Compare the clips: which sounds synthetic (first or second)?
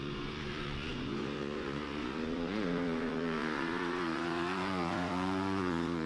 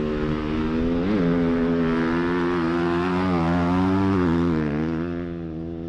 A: first